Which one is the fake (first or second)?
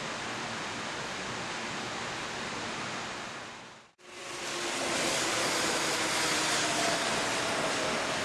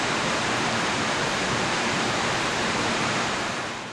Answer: second